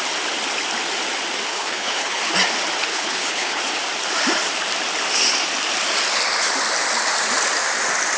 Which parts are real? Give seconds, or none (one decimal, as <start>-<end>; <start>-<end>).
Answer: 0.0-1.5; 2.3-2.9; 3.6-8.2

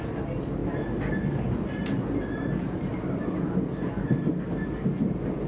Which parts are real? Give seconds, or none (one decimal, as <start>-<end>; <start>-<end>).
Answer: 0.0-5.5

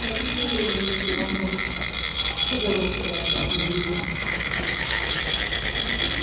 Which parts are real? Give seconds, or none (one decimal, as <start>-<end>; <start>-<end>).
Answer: 0.0-3.4; 5.2-6.2

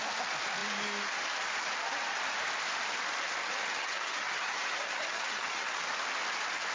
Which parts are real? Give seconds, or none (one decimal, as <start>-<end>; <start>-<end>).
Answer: 0.0-3.4; 5.8-6.7

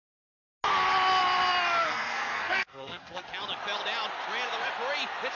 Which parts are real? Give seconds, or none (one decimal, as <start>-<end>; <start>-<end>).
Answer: 0.0-1.8; 3.2-5.3

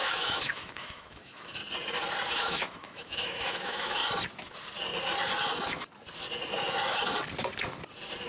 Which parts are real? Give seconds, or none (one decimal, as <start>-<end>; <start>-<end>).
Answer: 1.6-2.3; 4.0-8.3

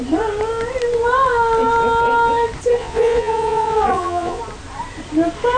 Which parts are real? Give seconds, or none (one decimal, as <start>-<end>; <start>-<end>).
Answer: 0.0-2.8; 4.4-5.6

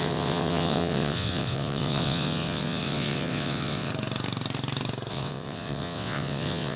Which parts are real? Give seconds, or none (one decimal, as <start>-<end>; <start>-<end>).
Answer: 3.9-5.1